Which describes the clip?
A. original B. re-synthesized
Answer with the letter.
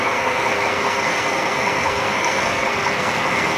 B